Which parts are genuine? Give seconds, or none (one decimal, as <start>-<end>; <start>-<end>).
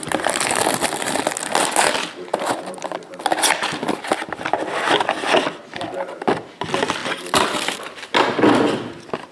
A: 0.0-2.3; 3.0-7.0; 8.0-9.3